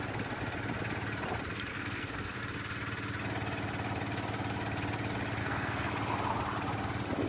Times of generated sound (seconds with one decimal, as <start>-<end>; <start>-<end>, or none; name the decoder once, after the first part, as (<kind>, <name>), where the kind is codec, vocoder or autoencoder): 1.7-2.4 (codec, SNAC); 5.4-5.9